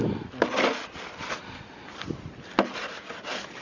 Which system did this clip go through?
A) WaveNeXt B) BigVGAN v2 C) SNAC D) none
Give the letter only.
D